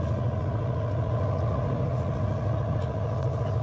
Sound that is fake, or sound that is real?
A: fake